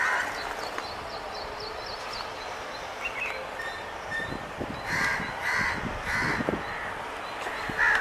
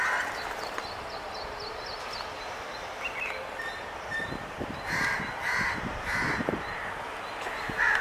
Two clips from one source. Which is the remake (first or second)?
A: second